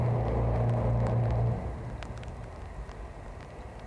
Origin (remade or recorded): recorded